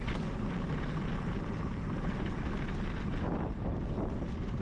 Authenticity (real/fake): real